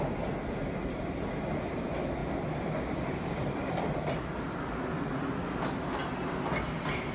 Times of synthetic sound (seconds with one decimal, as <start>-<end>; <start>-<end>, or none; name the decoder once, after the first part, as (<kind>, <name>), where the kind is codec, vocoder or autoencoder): 2.2-4.0 (vocoder, BigVGAN v2)